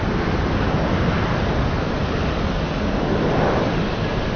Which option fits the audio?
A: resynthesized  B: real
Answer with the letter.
B